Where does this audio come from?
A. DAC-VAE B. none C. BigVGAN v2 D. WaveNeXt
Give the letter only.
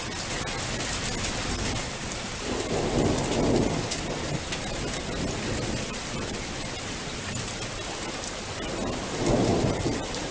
B